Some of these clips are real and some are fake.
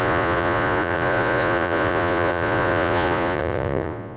fake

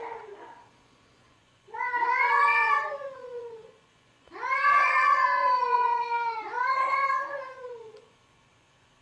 fake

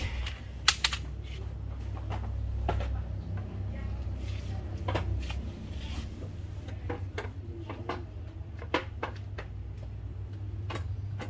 real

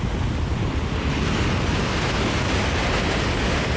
real